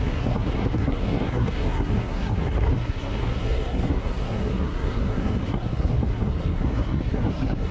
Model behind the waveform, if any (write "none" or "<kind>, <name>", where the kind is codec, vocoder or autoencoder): codec, SNAC